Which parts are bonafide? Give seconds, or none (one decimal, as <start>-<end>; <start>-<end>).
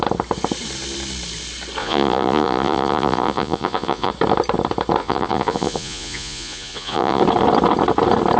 0.0-1.8; 4.1-5.0; 7.2-8.4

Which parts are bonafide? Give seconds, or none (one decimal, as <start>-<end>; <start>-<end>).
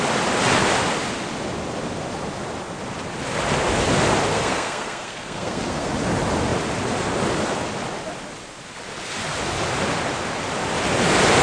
0.0-4.3; 5.9-11.4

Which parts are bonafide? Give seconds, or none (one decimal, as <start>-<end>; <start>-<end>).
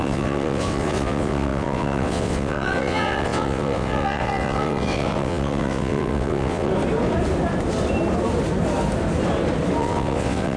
6.7-9.8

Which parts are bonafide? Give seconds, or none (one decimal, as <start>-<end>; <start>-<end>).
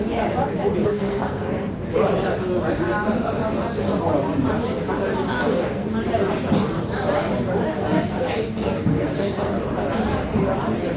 0.0-0.8; 1.7-5.3; 5.9-7.7; 9.5-11.0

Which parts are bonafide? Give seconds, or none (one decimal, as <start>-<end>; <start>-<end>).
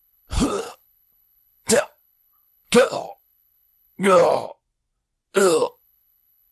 4.3-5.4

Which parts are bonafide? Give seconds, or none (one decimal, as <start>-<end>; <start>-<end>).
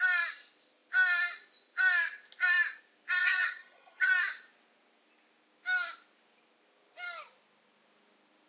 0.0-3.2; 4.1-8.5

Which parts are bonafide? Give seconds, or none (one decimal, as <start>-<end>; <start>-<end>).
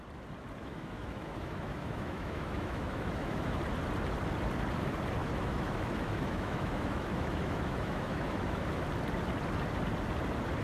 0.0-0.6; 3.6-5.2; 8.7-10.6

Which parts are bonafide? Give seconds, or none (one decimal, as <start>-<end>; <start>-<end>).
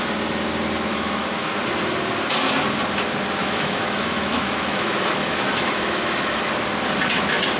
0.0-0.9; 1.5-3.4; 6.5-7.6